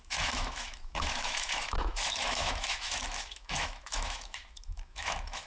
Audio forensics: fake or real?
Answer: fake